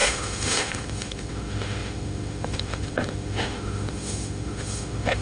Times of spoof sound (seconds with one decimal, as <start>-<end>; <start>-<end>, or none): 0.0-5.2